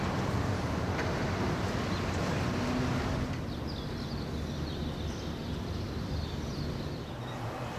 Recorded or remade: recorded